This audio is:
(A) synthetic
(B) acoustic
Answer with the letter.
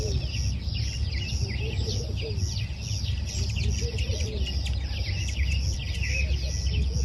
B